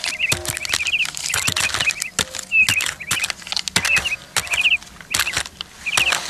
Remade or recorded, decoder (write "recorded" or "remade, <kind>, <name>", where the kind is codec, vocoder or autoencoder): recorded